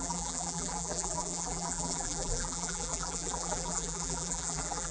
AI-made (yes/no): yes